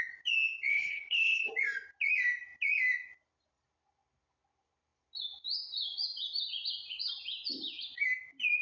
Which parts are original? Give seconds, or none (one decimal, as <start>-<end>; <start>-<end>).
0.0-0.7; 1.5-8.6